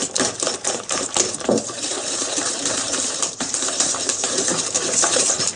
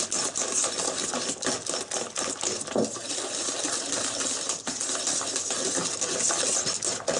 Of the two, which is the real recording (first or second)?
second